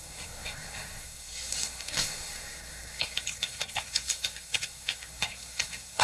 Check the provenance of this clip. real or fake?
fake